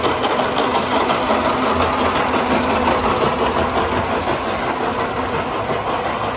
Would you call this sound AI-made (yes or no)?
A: no